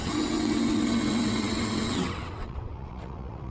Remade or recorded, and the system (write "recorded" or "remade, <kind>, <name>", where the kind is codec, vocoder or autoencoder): remade, vocoder, WaveNeXt